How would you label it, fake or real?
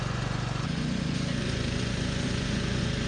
fake